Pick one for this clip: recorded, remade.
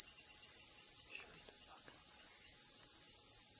recorded